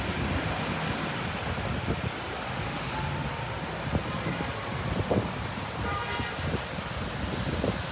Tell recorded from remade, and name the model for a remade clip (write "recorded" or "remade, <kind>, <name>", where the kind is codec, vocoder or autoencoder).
recorded